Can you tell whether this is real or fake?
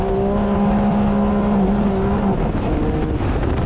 real